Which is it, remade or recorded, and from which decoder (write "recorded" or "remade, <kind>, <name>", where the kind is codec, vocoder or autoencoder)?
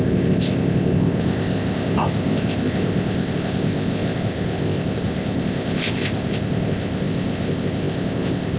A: remade, codec, ZipCodec